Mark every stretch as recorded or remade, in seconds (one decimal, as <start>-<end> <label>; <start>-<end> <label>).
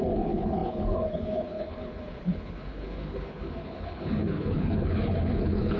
0.0-5.8 remade